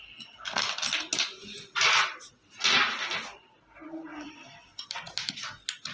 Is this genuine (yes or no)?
yes